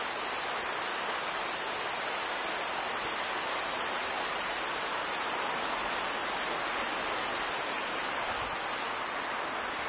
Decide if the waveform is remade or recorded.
recorded